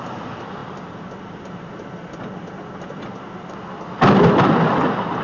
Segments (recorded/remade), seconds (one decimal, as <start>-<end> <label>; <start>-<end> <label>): 0.0-5.2 recorded